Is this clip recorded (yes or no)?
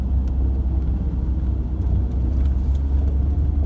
yes